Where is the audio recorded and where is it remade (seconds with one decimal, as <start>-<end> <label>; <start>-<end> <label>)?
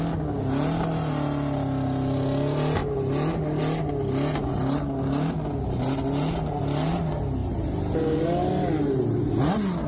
0.0-9.9 recorded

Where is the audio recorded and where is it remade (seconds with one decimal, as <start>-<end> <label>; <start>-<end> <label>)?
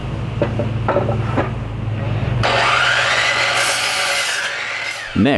0.0-2.2 recorded; 2.2-4.6 remade; 4.6-5.4 recorded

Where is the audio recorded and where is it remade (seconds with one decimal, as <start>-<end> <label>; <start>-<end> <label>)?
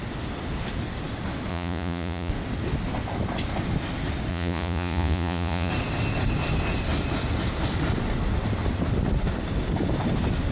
0.0-1.5 recorded; 1.5-2.3 remade; 2.3-4.3 recorded; 4.3-5.7 remade; 5.7-10.5 recorded